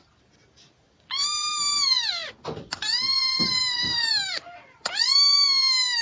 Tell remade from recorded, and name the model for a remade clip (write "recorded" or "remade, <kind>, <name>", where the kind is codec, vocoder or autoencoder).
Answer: recorded